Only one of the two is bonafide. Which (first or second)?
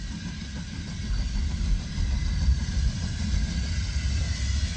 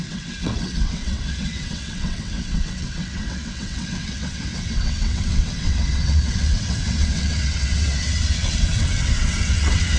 first